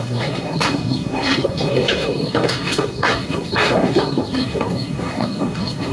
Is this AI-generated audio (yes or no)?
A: yes